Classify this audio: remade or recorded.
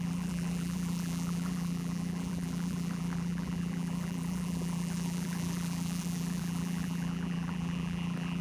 remade